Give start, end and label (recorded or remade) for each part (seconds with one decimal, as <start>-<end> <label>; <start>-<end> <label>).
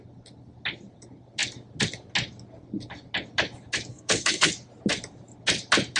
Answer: 0.0-3.9 recorded; 3.9-4.5 remade; 4.5-6.0 recorded